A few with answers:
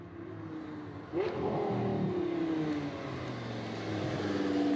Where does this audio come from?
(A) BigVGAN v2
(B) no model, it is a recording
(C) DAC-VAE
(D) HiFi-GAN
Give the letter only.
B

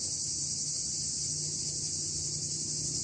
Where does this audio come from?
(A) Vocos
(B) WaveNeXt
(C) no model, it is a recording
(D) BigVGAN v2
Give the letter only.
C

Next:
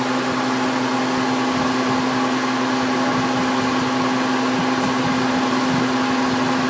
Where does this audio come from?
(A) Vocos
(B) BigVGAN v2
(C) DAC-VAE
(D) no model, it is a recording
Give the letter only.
D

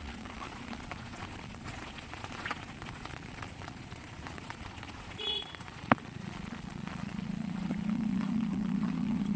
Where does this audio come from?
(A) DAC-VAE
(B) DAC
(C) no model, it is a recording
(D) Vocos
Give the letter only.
D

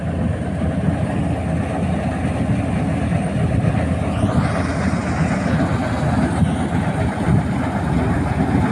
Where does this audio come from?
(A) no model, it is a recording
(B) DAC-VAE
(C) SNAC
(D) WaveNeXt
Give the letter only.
A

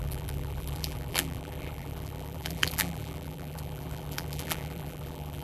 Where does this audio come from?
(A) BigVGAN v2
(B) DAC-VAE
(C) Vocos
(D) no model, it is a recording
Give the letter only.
A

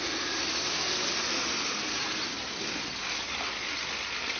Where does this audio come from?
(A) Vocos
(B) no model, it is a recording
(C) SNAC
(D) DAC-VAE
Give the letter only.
B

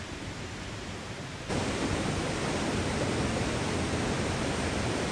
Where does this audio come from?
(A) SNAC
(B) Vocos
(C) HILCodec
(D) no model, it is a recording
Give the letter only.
D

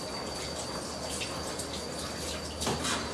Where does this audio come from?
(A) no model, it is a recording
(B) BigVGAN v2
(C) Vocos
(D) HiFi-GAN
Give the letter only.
A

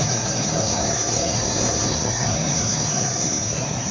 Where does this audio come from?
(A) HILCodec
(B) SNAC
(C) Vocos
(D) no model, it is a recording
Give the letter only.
B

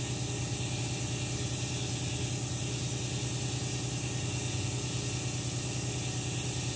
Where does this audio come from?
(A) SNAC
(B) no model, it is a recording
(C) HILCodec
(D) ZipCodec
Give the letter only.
B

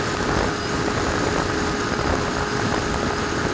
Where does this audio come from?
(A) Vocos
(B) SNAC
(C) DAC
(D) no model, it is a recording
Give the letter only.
D